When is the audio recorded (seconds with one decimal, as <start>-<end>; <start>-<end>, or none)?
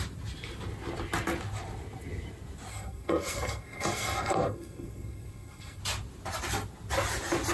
0.0-2.7; 5.8-7.5